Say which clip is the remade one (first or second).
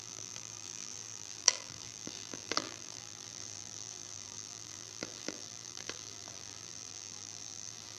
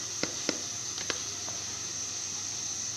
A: first